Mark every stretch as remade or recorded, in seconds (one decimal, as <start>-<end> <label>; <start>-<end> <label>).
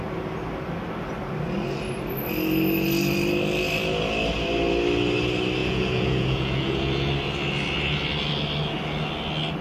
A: 0.0-5.6 recorded; 5.6-7.1 remade; 7.1-9.6 recorded